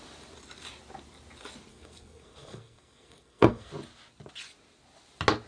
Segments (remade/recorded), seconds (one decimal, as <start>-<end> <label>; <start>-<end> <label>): 0.0-1.7 recorded; 1.7-3.7 remade; 3.7-5.5 recorded